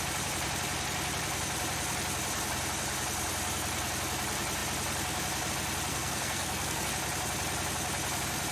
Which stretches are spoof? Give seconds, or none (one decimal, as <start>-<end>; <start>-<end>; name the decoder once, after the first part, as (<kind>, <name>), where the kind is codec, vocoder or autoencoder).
5.9-6.9 (codec, SNAC)